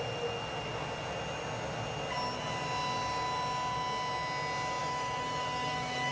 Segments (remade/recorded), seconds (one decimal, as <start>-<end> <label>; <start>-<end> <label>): 0.0-4.8 recorded; 4.8-6.1 remade

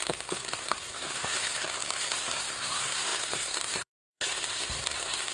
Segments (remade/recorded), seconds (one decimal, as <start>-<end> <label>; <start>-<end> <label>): 0.0-5.3 remade

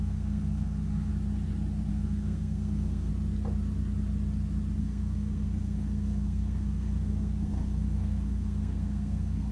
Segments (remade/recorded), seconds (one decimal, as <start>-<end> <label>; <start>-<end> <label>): 0.0-1.1 remade; 1.1-1.9 recorded; 1.9-3.1 remade; 3.1-4.8 recorded; 4.8-9.5 remade

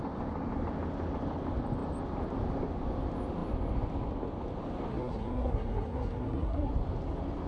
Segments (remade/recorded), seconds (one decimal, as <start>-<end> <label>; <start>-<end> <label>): 0.0-4.9 recorded; 4.9-6.7 remade; 6.7-7.5 recorded

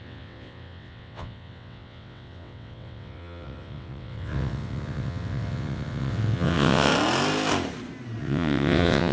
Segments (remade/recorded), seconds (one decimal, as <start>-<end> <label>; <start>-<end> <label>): 0.0-6.9 remade; 6.9-8.2 recorded; 8.2-9.1 remade

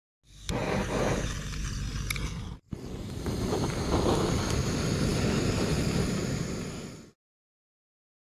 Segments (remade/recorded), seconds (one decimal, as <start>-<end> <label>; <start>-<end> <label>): 0.0-8.3 recorded